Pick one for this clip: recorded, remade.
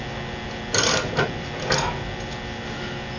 recorded